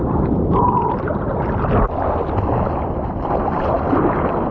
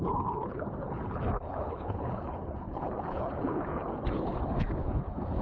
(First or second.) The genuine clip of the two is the first